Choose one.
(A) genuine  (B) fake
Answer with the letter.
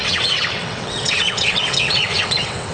B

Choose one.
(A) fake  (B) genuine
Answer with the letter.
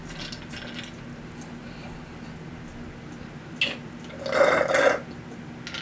B